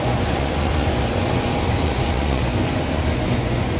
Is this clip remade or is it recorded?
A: remade